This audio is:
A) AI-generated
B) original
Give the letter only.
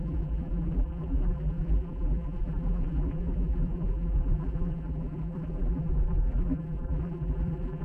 A